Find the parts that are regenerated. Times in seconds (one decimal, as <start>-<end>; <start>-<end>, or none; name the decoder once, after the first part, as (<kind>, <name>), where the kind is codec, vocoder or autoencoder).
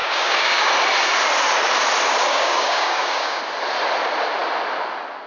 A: 0.0-0.7 (codec, DAC); 2.3-3.4